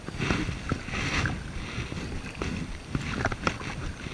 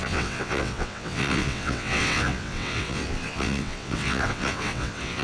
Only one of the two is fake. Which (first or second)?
second